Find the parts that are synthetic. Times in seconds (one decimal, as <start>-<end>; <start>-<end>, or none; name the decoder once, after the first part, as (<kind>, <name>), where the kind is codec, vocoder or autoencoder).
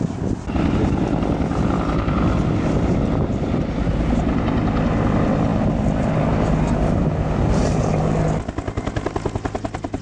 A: none